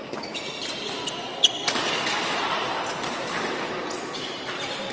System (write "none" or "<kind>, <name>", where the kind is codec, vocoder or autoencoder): none